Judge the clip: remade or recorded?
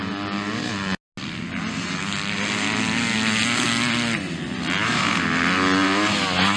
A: recorded